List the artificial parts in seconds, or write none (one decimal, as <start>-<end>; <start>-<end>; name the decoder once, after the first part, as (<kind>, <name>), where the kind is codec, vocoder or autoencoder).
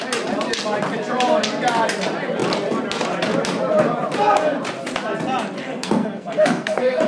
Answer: 5.6-7.1 (codec, SNAC)